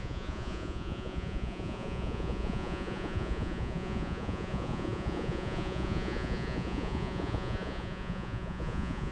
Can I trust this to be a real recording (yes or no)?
no